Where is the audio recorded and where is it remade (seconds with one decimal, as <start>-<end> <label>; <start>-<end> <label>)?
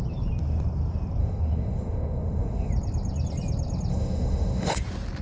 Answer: 0.0-1.2 recorded; 1.2-2.7 remade; 2.7-3.9 recorded; 3.9-4.8 remade; 4.8-5.2 recorded